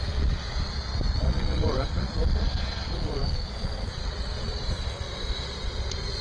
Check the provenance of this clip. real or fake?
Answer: fake